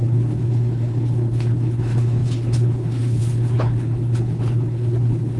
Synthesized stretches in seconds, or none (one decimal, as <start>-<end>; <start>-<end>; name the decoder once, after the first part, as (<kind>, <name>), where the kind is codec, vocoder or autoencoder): 0.0-5.4 (codec, HILCodec)

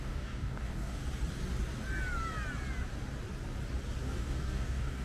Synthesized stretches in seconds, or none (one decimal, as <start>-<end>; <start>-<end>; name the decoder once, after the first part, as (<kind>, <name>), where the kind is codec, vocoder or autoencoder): 0.0-1.0 (codec, DAC); 4.0-5.0

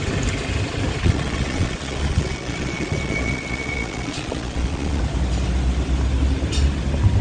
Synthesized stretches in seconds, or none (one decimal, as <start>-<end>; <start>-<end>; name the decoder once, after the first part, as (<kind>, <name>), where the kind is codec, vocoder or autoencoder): 1.0-5.0 (vocoder, Vocos)

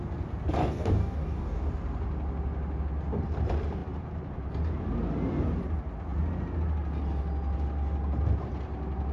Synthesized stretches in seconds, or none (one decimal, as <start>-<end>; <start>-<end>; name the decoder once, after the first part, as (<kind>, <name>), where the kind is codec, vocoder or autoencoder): 0.6-1.7 (codec, DAC)

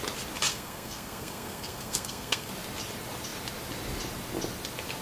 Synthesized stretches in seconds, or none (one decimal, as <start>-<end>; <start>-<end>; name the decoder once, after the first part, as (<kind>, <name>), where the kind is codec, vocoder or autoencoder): 0.5-2.5 (codec, SNAC)

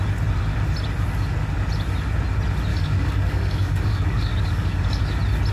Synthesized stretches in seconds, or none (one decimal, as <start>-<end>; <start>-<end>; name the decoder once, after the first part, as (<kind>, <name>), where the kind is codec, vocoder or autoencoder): 2.7-5.0 (codec, DAC)